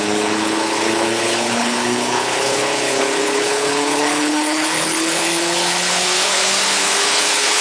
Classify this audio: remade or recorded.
remade